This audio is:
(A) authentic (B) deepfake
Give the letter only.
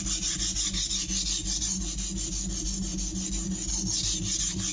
A